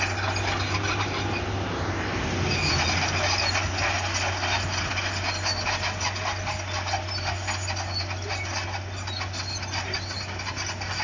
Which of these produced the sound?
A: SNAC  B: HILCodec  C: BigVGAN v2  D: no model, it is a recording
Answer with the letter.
D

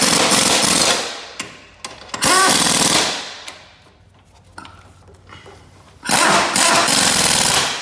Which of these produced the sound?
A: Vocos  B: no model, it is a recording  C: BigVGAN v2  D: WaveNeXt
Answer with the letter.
B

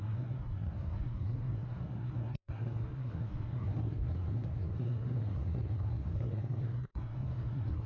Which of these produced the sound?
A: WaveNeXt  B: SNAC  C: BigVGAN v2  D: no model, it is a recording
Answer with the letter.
B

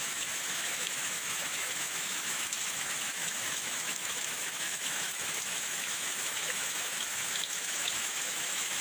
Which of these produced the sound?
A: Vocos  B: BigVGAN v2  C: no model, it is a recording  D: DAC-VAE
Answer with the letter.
D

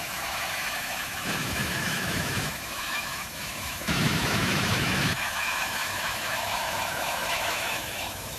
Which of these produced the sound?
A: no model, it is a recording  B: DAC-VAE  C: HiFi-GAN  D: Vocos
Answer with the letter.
B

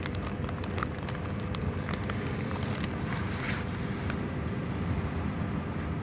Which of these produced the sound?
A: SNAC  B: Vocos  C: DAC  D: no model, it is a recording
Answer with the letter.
D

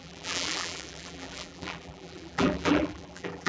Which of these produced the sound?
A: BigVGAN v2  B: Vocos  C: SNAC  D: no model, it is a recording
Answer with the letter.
A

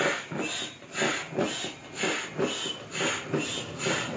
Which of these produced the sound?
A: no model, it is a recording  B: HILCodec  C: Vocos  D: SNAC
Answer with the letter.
A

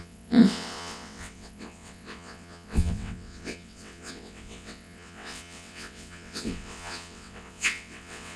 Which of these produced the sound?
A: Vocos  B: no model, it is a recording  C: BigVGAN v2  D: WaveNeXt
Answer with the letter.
D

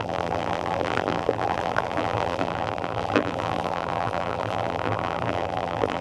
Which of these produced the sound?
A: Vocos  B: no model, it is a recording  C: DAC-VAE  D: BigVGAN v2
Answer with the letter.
D